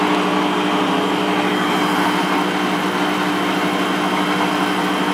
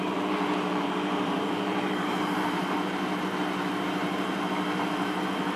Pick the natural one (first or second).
first